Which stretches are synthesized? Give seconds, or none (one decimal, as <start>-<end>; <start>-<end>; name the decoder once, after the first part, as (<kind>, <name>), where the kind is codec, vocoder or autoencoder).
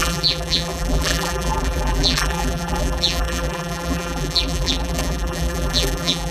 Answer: 0.0-6.3 (vocoder, BigVGAN v2)